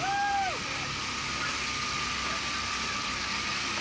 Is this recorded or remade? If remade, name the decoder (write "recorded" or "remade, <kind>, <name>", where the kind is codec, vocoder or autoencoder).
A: recorded